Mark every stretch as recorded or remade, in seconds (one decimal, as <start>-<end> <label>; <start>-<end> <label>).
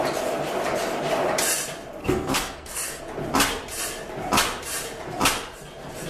0.0-2.0 recorded; 2.0-3.0 remade; 3.0-6.1 recorded